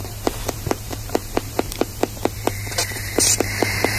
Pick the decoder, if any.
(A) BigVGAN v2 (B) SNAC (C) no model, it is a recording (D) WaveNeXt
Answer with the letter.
A